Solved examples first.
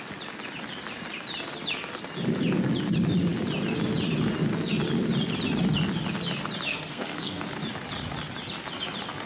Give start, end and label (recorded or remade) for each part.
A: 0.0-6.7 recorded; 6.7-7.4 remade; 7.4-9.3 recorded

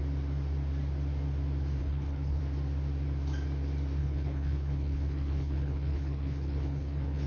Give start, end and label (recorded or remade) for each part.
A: 0.0-1.8 recorded; 1.8-2.4 remade; 2.4-4.0 recorded; 4.0-7.3 remade

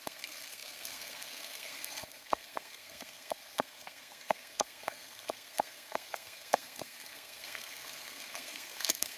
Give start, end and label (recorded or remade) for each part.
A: 0.0-9.2 remade